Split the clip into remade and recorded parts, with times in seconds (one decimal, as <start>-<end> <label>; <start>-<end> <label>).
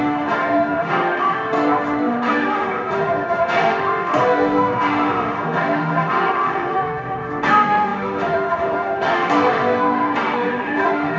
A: 0.0-11.2 remade